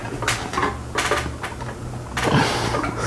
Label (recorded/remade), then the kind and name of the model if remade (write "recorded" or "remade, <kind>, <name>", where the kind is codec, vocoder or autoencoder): recorded